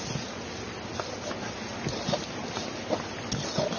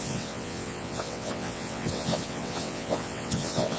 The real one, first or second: first